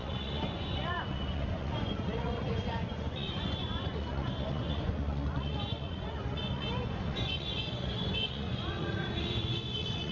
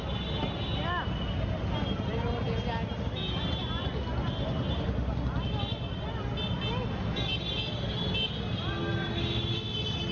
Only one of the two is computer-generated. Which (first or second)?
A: first